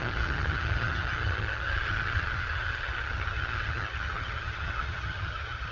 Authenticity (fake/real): fake